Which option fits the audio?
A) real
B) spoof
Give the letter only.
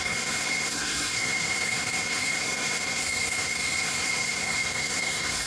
B